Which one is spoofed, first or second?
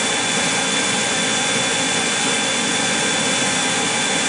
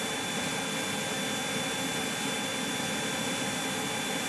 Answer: first